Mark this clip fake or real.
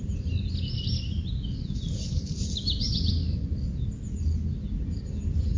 real